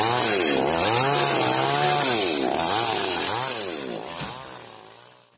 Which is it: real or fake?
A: real